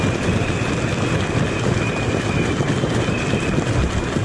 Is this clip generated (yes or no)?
no